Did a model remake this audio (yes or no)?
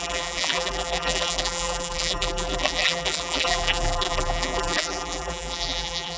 yes